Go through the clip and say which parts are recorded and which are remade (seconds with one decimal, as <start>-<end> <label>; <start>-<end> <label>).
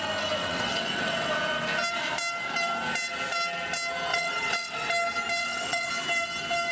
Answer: 0.0-0.4 recorded; 0.4-1.3 remade; 1.3-4.1 recorded; 4.1-4.9 remade; 4.9-5.4 recorded; 5.4-5.9 remade; 5.9-6.7 recorded